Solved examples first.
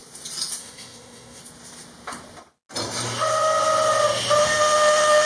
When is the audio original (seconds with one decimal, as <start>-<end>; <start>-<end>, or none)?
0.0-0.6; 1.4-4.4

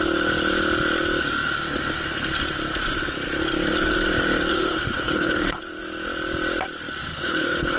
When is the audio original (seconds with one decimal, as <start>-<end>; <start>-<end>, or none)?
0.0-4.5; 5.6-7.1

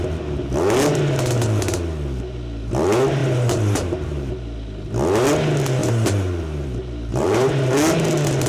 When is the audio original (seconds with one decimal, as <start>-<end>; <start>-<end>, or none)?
0.0-3.2; 4.3-5.8; 7.5-8.5